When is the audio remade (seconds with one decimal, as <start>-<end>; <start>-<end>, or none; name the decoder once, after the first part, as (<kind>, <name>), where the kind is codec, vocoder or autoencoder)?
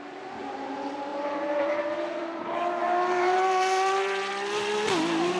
1.1-4.3 (vocoder, BigVGAN v2)